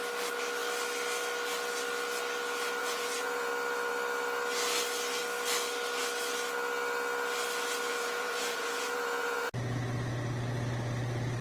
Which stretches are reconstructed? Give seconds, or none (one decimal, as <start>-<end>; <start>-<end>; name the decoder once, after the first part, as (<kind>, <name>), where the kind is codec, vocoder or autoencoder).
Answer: 2.8-3.5 (vocoder, Vocos); 7.9-9.5

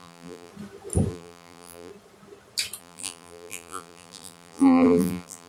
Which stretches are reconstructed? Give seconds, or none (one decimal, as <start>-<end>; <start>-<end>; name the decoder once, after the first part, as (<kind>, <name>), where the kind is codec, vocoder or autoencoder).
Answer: 0.0-0.5 (vocoder, BigVGAN v2); 1.1-1.9; 2.8-5.5